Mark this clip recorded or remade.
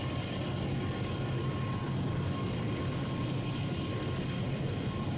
recorded